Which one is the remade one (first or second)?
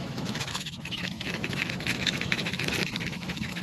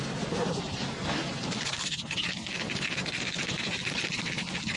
first